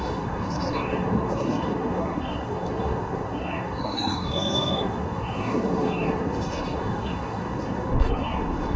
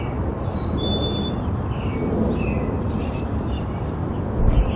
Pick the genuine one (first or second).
second